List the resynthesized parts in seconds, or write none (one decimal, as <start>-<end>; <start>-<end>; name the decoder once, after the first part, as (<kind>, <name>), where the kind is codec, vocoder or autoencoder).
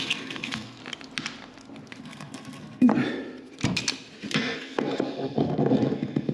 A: 0.0-0.8 (codec, SNAC); 2.0-2.9; 4.3-6.3